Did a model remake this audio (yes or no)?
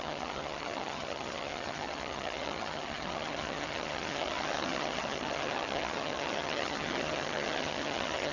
yes